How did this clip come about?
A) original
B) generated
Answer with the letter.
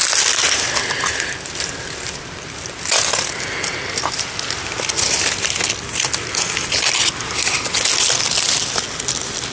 A